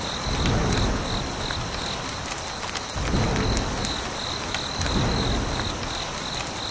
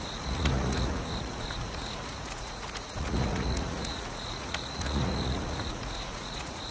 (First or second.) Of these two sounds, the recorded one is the first